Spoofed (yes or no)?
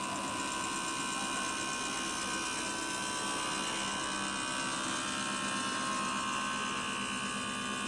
no